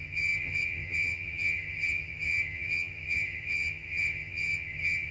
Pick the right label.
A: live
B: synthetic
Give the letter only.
B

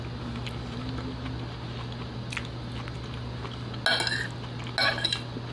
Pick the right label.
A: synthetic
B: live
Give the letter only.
B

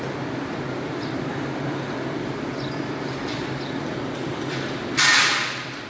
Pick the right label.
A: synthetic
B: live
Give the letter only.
A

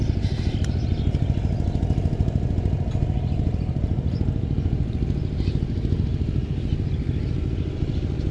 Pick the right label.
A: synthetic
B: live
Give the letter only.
B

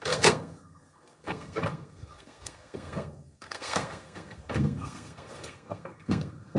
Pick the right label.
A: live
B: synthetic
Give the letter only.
B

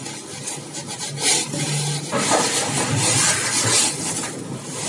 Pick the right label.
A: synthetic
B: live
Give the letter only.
B